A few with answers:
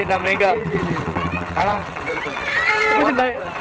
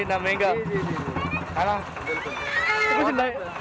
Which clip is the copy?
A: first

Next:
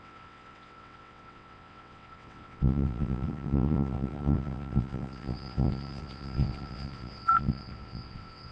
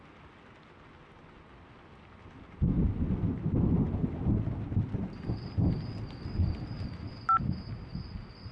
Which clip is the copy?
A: first